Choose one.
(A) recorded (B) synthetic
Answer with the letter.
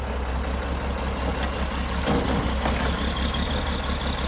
A